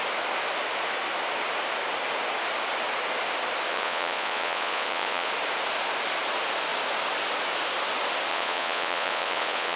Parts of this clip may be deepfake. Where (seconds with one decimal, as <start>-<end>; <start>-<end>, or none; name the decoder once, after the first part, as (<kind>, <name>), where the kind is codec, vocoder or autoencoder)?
3.7-5.3 (vocoder, Vocos); 8.3-9.8